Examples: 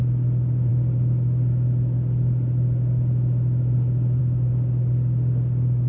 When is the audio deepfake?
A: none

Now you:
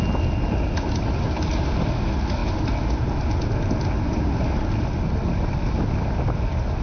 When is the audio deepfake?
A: none

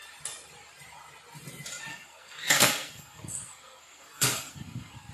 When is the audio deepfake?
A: 1.9-5.1 (codec, SNAC)

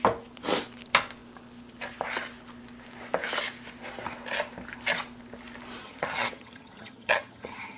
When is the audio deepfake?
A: 5.8-7.8 (vocoder, HiFi-GAN)

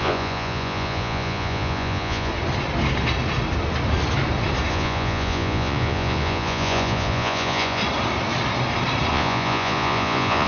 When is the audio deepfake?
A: 0.0-2.3 (vocoder, Vocos); 4.7-7.8; 9.1-10.5